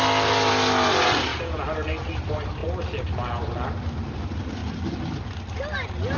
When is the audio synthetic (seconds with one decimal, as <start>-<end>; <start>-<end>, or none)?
none